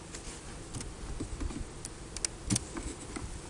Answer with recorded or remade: recorded